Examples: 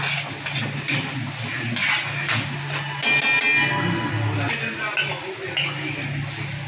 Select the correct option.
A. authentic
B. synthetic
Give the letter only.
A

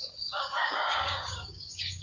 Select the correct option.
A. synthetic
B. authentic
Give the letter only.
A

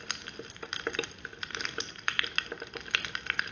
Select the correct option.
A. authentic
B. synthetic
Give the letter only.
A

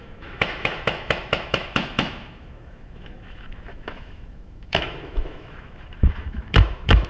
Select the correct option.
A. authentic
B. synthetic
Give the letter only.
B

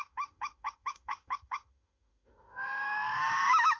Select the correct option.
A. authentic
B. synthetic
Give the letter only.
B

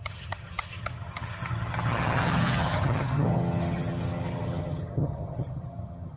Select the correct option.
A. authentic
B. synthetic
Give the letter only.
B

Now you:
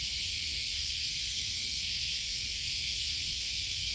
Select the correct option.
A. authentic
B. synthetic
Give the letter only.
B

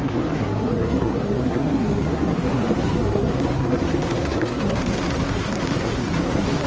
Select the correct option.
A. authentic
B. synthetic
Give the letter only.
B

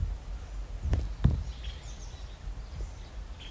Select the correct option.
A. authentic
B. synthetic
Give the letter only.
A